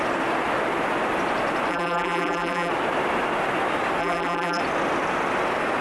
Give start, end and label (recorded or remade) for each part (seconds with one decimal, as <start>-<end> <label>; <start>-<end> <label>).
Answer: 0.0-1.7 recorded; 1.7-2.7 remade; 2.7-4.0 recorded; 4.0-4.6 remade; 4.6-5.8 recorded